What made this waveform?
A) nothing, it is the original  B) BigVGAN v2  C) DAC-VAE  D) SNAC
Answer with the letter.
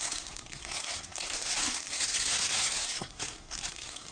D